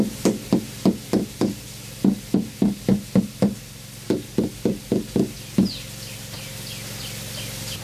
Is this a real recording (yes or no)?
yes